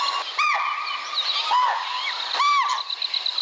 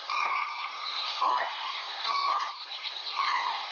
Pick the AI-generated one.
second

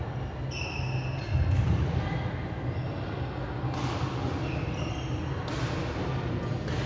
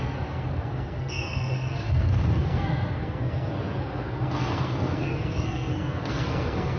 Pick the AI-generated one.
second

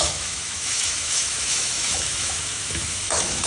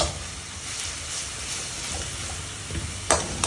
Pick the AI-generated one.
first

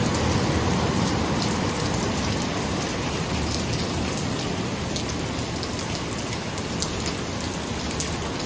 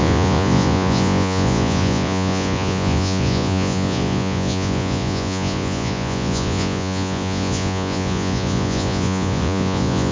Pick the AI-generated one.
second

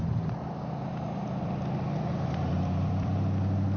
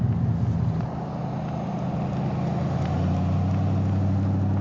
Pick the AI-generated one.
first